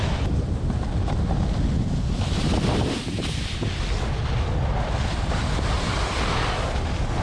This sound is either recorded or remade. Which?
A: recorded